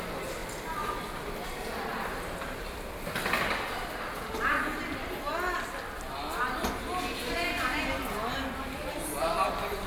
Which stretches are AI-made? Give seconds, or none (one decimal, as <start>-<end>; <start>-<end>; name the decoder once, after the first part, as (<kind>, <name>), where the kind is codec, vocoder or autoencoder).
none

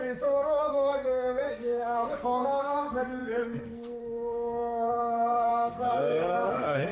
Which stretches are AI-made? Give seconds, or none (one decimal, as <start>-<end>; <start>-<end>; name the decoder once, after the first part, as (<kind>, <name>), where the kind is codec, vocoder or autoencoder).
0.0-6.9 (codec, SNAC)

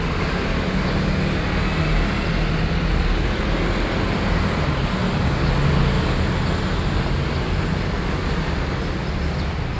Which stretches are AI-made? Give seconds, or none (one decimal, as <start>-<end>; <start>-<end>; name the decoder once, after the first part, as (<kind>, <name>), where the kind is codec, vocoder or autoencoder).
none

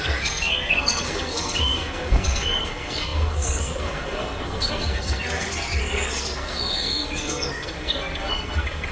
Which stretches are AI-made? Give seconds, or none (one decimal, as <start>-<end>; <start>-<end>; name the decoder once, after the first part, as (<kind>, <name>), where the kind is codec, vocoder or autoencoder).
0.0-8.9 (codec, SNAC)